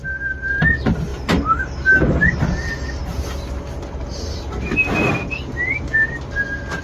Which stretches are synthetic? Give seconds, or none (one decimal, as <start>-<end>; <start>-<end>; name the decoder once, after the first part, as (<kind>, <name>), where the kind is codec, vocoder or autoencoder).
none

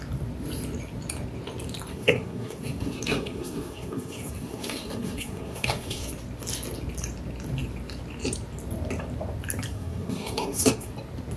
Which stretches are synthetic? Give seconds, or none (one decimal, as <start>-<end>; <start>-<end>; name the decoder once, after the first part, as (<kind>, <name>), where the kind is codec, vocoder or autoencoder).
1.9-6.1 (codec, SNAC); 9.7-10.9

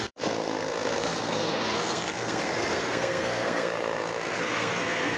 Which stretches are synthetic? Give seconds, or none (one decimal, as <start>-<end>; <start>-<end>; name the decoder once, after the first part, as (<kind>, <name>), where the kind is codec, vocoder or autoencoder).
0.0-5.2 (codec, SNAC)

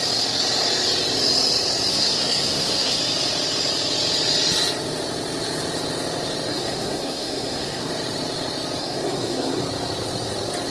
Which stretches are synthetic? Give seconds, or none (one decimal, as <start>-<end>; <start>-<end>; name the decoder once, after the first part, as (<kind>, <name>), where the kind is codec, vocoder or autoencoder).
1.9-3.0 (codec, SNAC); 6.5-7.9; 8.8-9.6

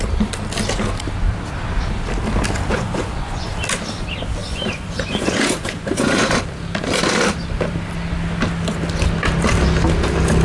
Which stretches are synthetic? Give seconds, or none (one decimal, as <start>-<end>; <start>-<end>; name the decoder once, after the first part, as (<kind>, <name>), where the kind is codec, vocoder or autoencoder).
2.7-3.5 (vocoder, Vocos); 4.4-6.4

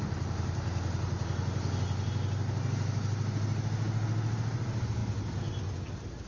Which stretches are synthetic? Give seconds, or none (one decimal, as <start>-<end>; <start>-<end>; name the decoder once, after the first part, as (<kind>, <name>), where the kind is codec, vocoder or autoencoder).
none